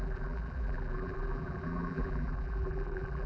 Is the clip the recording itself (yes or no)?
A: no